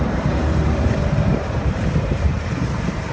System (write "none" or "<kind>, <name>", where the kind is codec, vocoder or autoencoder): vocoder, BigVGAN v2